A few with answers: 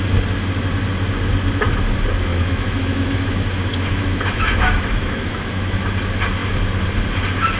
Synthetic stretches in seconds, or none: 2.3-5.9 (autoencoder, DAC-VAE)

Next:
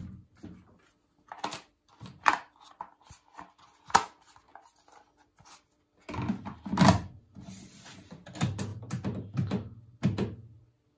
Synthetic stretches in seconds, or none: none

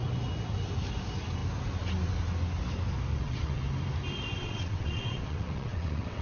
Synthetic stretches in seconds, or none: 3.1-3.6 (vocoder, WaveNeXt); 4.4-6.2

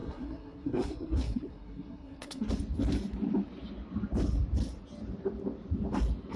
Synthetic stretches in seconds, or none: 0.0-2.5 (codec, SNAC)